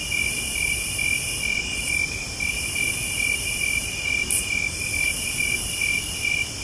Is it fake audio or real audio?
fake